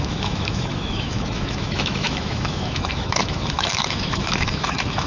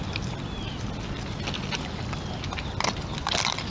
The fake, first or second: first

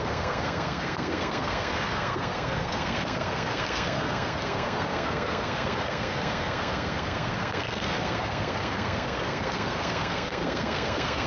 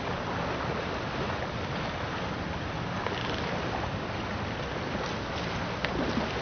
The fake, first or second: first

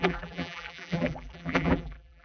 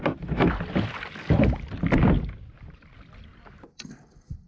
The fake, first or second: first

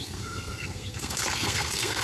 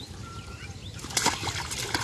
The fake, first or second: first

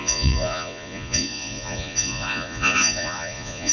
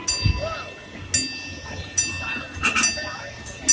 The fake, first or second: first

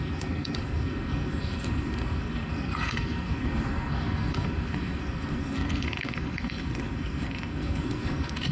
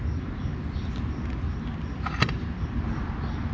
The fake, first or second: first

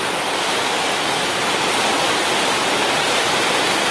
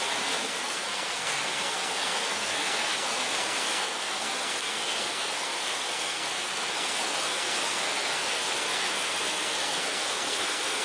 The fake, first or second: second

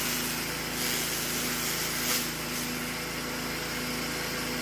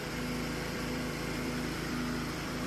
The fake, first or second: second